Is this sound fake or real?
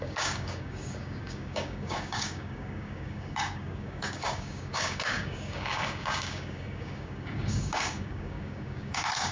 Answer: fake